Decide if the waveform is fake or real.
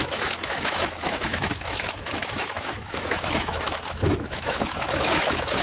fake